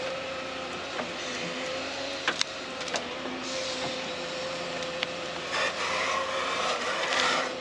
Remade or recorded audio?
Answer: remade